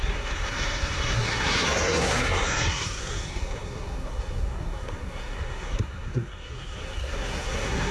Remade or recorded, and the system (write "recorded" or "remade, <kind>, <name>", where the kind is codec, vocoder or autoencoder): remade, codec, SNAC